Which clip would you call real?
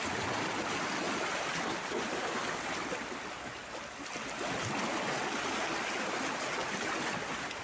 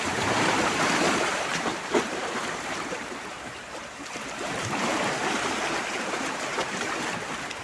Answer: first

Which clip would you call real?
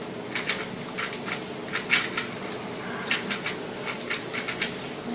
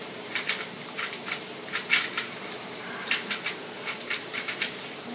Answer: first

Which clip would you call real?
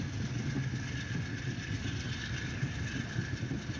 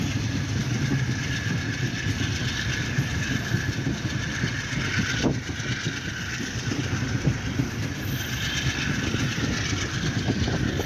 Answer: first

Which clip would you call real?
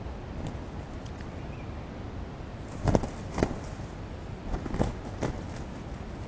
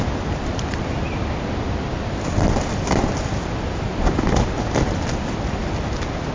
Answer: first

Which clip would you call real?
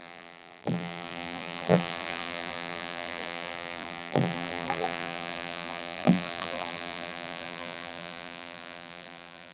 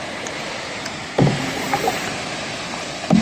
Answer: second